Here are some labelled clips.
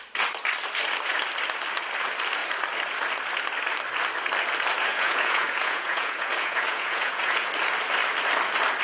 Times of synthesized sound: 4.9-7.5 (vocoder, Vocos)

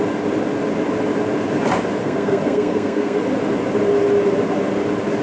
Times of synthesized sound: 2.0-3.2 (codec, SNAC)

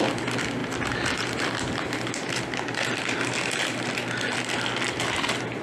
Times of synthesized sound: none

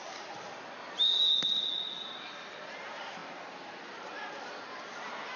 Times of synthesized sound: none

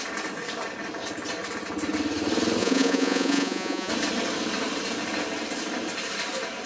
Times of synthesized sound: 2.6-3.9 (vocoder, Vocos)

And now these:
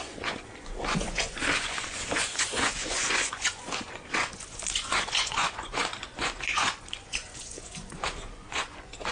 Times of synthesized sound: 0.0-9.1 (vocoder, Vocos)

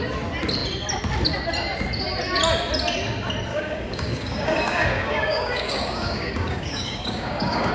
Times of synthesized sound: 3.5-7.7 (codec, DAC)